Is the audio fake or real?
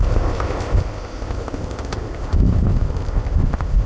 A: fake